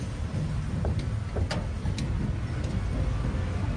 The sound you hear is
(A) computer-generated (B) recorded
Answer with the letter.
B